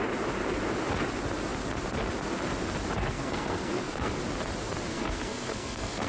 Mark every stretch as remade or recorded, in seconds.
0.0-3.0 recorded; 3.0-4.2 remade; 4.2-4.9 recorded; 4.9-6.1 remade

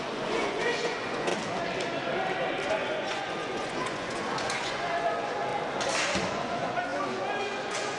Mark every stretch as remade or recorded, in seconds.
0.0-1.3 remade; 1.3-2.7 recorded; 2.7-5.5 remade; 5.5-6.3 recorded; 6.3-8.0 remade